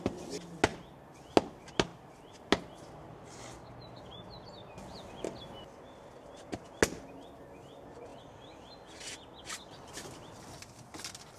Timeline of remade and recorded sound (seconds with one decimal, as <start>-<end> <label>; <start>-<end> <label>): 0.0-0.7 recorded; 0.7-1.2 remade; 1.2-11.4 recorded